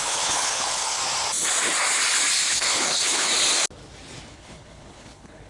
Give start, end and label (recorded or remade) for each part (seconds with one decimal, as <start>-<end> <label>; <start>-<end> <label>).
0.0-1.0 remade; 1.0-2.4 recorded; 2.4-3.3 remade; 3.3-4.3 recorded; 4.3-5.5 remade